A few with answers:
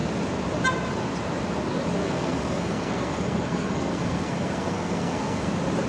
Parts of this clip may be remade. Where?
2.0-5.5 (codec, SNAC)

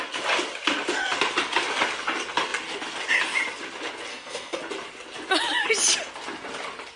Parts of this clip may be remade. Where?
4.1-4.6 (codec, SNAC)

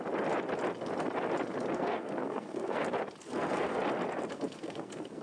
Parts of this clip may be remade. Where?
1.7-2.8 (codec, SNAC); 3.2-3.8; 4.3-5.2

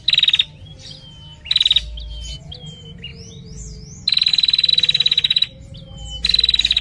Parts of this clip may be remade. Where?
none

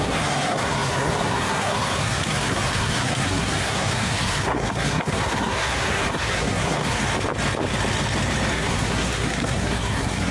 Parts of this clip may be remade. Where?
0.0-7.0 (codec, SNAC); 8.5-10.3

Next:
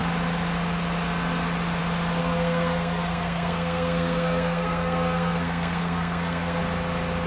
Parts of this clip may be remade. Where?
2.2-6.6 (codec, SNAC)

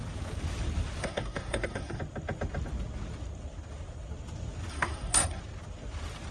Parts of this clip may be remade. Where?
1.0-2.0 (codec, SNAC); 4.7-5.4

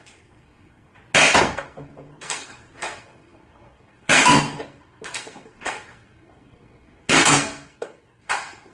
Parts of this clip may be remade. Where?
0.0-0.9 (codec, SNAC); 1.4-8.7